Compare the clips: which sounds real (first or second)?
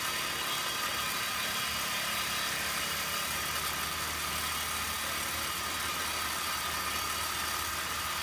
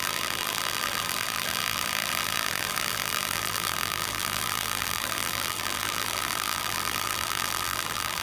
first